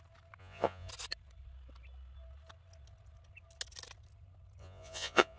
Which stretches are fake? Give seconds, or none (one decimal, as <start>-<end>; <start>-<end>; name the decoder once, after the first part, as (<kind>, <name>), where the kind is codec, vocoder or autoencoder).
0.4-0.9 (vocoder, Vocos); 4.6-5.4